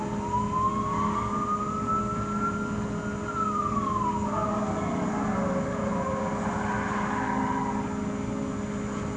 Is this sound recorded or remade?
recorded